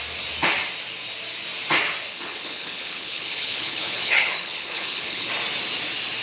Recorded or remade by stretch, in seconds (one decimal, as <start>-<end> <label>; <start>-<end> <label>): 0.0-2.1 recorded; 2.1-5.3 remade; 5.3-6.2 recorded